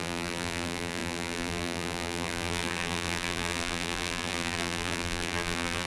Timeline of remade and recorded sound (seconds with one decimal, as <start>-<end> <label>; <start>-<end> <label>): 0.0-5.9 remade